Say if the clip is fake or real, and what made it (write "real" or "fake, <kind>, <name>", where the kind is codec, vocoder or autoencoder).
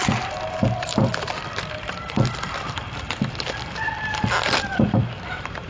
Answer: fake, vocoder, BigVGAN v2